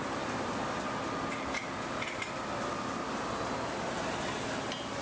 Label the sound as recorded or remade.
recorded